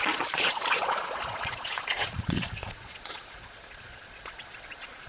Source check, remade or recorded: remade